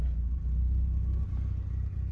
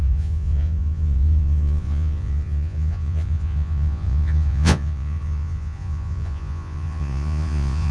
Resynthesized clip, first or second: second